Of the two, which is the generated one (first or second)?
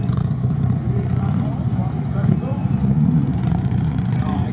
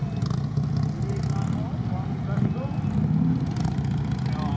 first